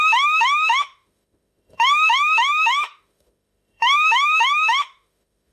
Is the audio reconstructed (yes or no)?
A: yes